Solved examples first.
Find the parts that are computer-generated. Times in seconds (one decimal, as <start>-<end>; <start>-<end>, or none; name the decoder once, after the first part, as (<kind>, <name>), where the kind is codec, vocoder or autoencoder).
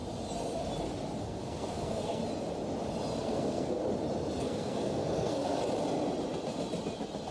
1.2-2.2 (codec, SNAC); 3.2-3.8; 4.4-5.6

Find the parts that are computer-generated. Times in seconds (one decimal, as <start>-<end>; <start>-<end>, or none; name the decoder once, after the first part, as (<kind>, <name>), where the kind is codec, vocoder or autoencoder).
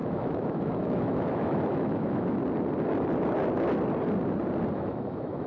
0.0-2.4 (autoencoder, DAC-VAE); 4.7-5.5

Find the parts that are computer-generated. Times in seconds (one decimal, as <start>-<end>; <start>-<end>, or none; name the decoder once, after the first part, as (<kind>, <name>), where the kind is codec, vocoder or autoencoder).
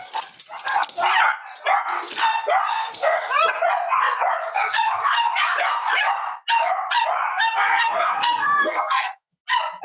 2.7-3.3 (codec, SNAC); 7.3-9.4